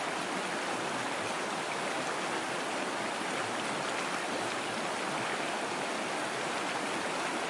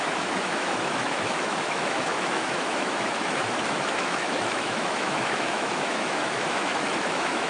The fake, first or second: second